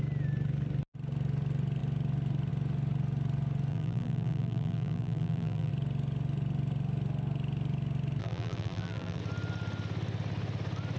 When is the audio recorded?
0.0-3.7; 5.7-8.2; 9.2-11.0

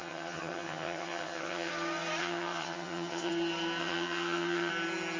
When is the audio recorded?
1.7-2.2; 3.3-3.8; 4.7-5.2

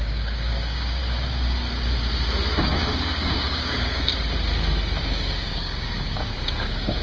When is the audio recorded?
1.0-2.6; 4.1-5.0

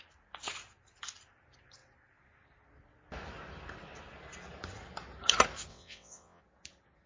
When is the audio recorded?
0.0-5.7; 6.4-7.1